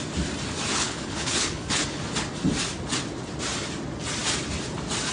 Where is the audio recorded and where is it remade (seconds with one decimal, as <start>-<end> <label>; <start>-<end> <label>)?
0.0-0.7 recorded; 0.7-2.0 remade; 2.0-5.1 recorded